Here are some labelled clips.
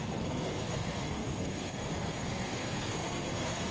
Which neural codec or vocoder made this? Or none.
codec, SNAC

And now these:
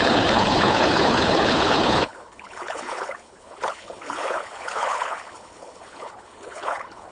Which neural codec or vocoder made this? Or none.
codec, HILCodec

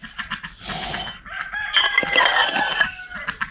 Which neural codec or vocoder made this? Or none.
none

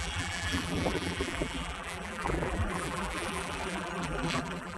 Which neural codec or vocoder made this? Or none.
vocoder, BigVGAN v2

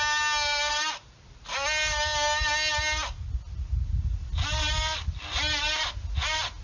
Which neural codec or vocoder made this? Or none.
none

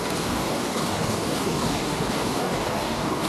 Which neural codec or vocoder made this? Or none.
codec, DAC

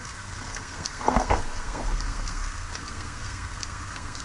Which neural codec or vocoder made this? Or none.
codec, SNAC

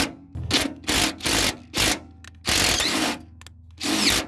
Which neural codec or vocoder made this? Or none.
none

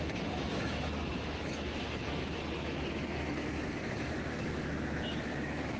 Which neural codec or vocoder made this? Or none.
autoencoder, DAC-VAE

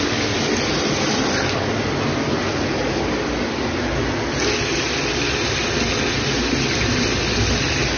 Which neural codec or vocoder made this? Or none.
none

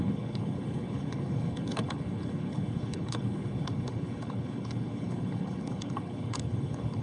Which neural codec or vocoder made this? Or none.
codec, HILCodec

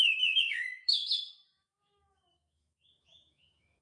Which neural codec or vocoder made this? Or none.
autoencoder, DAC-VAE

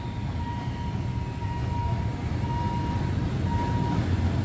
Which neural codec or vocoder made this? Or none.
none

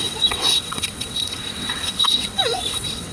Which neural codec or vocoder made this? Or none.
vocoder, WaveNeXt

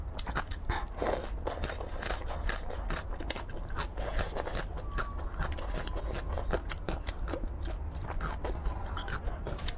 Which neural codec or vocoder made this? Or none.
none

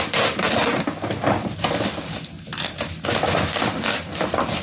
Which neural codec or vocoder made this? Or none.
none